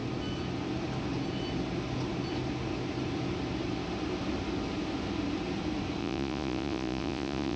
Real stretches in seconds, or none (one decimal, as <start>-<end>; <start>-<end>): 0.0-6.0